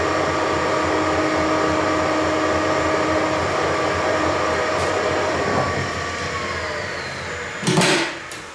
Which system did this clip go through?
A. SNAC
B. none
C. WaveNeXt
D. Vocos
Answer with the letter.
B